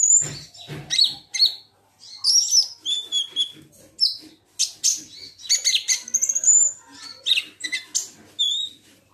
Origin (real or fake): real